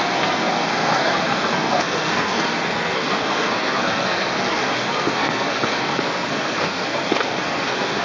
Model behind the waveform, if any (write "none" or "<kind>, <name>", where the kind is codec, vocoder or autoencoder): codec, SNAC